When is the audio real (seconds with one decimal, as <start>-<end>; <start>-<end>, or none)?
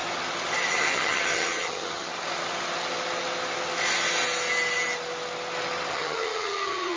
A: 0.0-0.7; 2.1-5.9